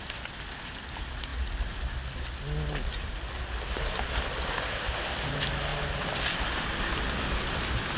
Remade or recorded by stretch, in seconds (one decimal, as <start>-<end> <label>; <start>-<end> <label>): 0.0-8.0 recorded